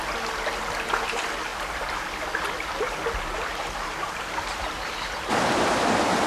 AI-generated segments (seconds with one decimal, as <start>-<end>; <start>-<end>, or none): none